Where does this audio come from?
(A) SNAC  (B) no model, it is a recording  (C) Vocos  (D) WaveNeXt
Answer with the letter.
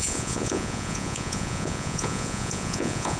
C